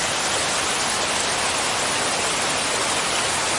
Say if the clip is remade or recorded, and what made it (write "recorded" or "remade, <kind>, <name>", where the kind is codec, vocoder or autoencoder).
recorded